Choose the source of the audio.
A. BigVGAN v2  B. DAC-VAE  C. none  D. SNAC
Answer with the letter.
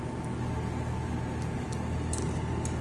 C